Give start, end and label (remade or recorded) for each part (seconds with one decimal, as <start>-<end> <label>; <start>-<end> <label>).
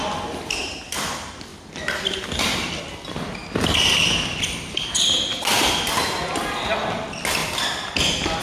0.0-8.4 recorded